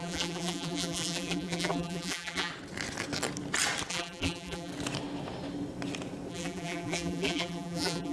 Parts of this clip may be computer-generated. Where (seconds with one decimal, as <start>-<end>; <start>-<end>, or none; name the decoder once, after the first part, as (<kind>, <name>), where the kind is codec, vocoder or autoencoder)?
0.0-2.5 (vocoder, BigVGAN v2); 3.9-4.7; 6.3-8.1